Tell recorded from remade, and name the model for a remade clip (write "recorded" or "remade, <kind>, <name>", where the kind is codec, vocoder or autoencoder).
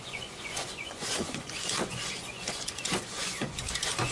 remade, vocoder, Vocos